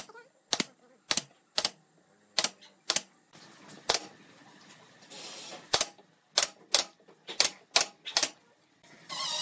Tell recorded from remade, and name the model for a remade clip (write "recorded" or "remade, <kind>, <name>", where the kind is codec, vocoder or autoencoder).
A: recorded